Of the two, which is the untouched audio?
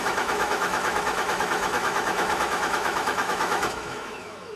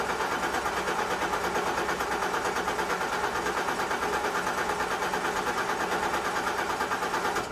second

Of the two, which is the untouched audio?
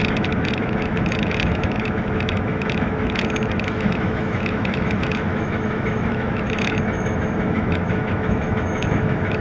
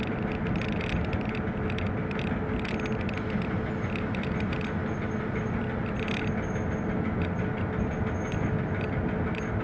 second